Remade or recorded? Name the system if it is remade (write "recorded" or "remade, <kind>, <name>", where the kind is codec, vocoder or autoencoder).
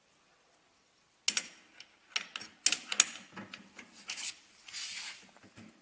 recorded